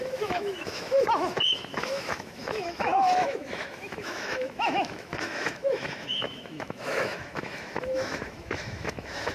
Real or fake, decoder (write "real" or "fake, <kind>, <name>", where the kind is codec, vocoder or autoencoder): fake, autoencoder, DAC-VAE